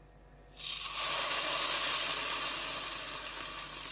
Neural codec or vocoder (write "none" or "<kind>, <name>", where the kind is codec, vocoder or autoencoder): none